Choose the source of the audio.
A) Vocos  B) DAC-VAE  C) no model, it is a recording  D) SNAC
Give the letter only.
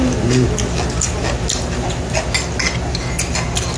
C